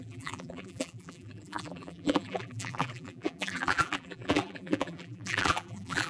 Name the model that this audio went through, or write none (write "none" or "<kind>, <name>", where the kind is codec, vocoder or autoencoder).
vocoder, BigVGAN v2